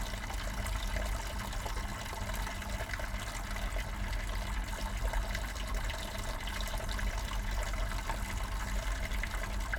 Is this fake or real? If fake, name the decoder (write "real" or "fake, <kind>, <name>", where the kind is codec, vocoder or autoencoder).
real